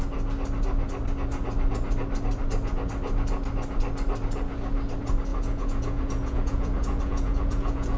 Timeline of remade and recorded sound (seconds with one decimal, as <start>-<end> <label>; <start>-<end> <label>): 0.0-5.3 recorded; 5.3-8.0 remade